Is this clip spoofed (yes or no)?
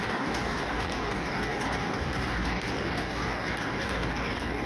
yes